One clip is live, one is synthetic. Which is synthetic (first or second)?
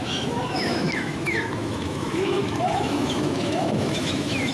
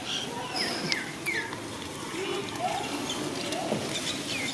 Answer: first